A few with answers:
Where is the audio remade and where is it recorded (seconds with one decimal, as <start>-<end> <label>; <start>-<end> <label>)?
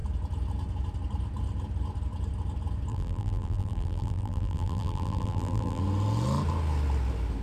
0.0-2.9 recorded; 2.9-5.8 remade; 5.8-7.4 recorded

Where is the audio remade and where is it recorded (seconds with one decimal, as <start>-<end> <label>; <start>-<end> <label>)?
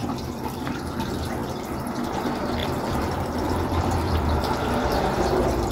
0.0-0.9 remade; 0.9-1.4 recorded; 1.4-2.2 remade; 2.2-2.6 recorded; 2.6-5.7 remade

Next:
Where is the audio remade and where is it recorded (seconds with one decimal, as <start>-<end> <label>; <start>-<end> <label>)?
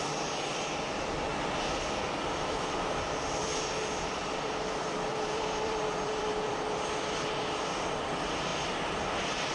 0.0-1.3 remade; 1.3-2.0 recorded; 2.0-8.5 remade; 8.5-9.1 recorded; 9.1-9.5 remade